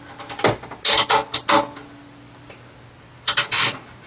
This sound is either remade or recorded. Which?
recorded